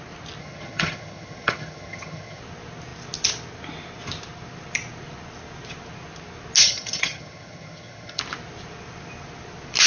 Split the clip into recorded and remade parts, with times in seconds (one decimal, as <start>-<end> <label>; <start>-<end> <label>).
0.0-0.4 recorded; 0.4-2.4 remade; 2.4-6.6 recorded; 6.6-8.2 remade; 8.2-9.9 recorded